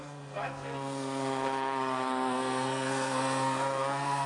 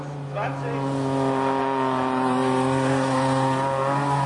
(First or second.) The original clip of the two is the second